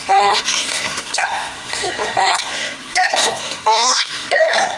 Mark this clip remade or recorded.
remade